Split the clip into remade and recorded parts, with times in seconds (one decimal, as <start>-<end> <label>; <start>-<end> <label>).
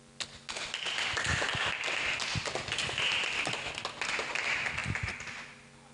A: 0.0-5.9 recorded